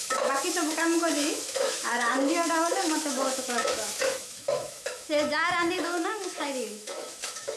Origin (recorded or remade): remade